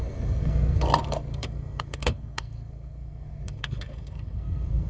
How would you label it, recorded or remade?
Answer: remade